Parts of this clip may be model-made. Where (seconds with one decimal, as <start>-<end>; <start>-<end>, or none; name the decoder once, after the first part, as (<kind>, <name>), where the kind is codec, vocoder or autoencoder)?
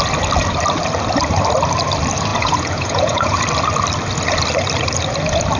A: 2.3-3.4 (vocoder, Vocos)